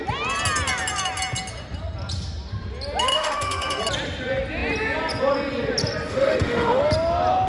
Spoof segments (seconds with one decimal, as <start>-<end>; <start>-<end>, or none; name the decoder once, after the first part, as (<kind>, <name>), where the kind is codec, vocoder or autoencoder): 3.1-3.8 (autoencoder, DAC-VAE); 6.1-6.8